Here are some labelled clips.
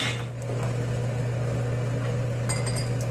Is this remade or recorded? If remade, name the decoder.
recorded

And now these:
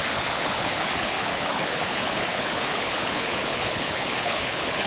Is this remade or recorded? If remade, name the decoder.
remade, codec, HILCodec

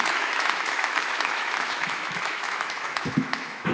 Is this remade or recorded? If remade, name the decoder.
remade, autoencoder, DAC-VAE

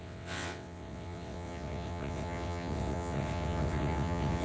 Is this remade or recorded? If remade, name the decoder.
remade, vocoder, WaveNeXt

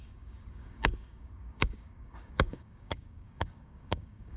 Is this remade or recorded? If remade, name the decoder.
remade, codec, DAC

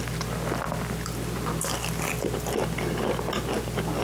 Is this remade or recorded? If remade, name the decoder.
recorded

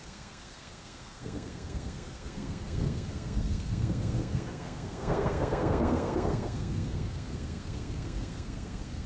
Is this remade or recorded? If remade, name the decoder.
remade, codec, SNAC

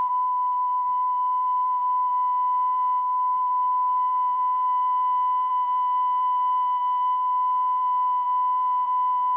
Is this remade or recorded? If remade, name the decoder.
remade, vocoder, BigVGAN v2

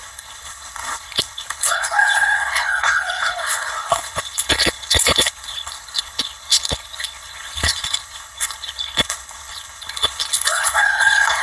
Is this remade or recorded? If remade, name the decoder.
remade, codec, HILCodec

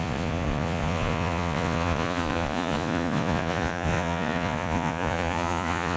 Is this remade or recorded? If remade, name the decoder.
remade, vocoder, Vocos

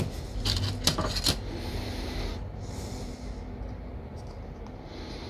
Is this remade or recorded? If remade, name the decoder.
recorded